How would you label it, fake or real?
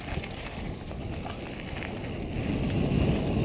real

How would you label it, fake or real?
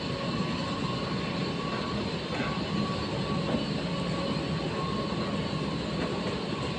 real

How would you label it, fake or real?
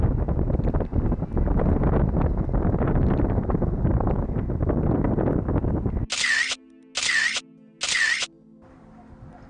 real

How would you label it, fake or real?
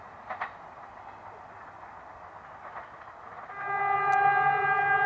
real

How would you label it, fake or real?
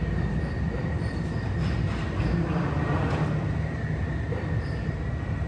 real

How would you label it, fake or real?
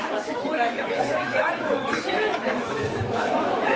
fake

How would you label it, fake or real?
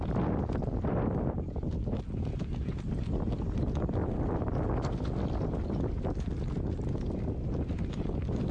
real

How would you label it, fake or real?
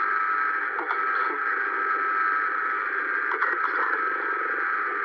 real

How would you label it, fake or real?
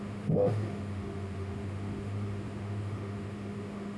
fake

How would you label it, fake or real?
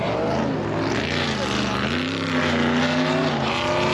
real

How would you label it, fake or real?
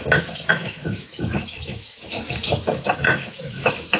fake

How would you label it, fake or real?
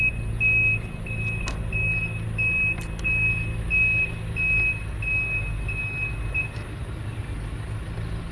real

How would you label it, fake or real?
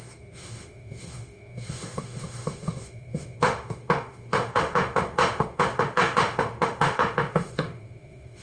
fake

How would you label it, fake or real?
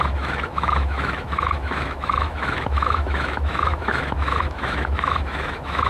fake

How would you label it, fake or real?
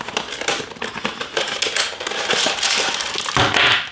real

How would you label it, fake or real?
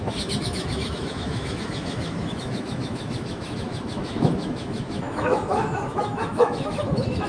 fake